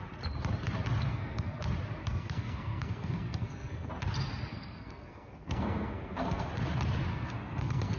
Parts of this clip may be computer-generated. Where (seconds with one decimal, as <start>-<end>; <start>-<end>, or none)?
1.1-1.6; 2.0-3.9; 4.5-6.5; 7.1-8.0